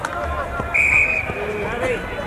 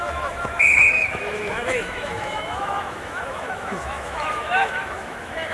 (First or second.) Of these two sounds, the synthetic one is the second